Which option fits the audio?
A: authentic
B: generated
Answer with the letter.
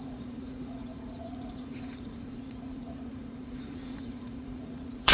B